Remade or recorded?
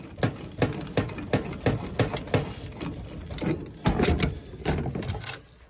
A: recorded